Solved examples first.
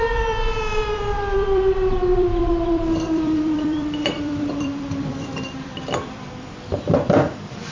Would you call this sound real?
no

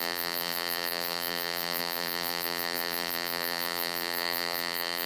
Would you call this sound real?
no